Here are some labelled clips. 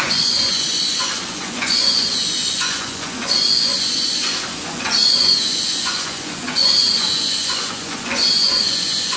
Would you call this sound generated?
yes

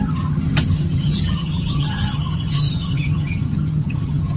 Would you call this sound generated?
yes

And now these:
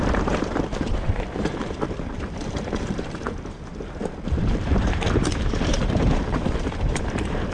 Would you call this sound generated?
yes